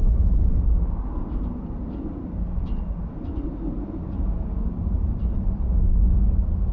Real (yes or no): yes